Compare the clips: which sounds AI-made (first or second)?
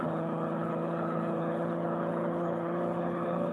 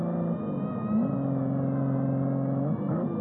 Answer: first